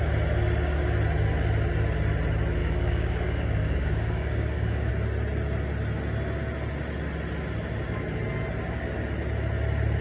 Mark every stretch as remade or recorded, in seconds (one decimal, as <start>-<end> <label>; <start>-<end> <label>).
0.0-2.6 recorded; 2.6-4.9 remade; 4.9-10.0 recorded